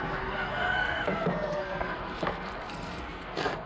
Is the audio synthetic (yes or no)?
yes